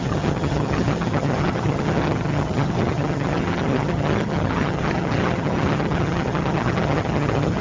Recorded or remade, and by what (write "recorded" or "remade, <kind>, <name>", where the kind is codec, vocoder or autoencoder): remade, vocoder, HiFi-GAN